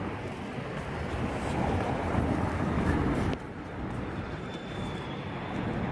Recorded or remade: recorded